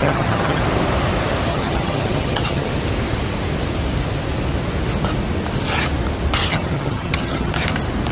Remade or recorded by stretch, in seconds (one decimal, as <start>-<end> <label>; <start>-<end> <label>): 0.0-0.6 remade; 0.6-1.5 recorded; 1.5-2.7 remade; 2.7-6.5 recorded; 6.5-7.5 remade; 7.5-8.1 recorded